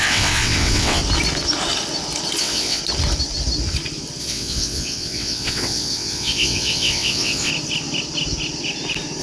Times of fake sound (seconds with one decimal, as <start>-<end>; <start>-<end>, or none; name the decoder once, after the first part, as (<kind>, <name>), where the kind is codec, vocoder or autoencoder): 0.0-1.0 (vocoder, WaveNeXt); 2.4-2.8; 4.2-7.5

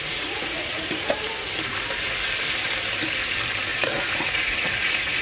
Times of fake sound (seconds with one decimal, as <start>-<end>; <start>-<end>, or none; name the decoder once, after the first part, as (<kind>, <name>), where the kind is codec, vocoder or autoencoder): 0.0-1.1 (vocoder, Vocos); 3.7-5.2

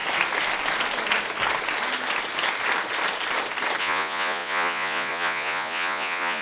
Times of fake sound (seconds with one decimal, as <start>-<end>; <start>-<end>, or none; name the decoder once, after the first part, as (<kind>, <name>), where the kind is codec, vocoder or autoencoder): 3.8-6.4 (vocoder, Vocos)

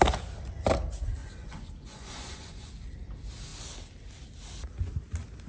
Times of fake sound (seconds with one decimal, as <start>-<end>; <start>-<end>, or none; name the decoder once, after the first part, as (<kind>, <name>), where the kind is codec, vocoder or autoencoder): 1.2-2.7 (vocoder, Vocos)

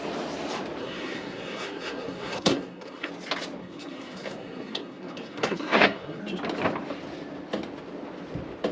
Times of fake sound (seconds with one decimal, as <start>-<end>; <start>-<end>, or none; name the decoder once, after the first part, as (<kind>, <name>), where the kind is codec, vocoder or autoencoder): 0.8-3.1 (codec, SNAC); 3.6-6.2